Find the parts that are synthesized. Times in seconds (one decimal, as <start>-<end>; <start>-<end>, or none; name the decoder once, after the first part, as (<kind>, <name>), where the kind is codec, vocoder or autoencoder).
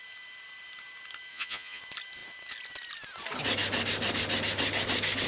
1.3-1.8 (vocoder, Vocos)